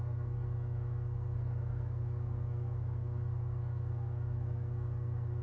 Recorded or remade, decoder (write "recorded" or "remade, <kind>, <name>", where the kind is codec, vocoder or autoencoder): remade, codec, SNAC